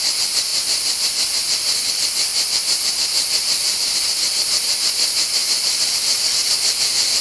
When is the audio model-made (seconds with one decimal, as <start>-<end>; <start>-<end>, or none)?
2.3-2.9